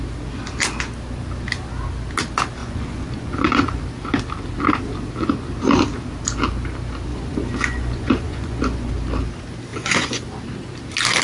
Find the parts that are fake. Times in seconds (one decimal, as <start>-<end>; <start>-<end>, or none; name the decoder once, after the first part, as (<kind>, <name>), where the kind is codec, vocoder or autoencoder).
2.6-3.8 (vocoder, Vocos); 7.1-8.9; 9.7-10.2